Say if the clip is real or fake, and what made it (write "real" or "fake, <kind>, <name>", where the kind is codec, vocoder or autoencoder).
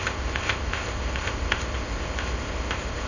fake, codec, ZipCodec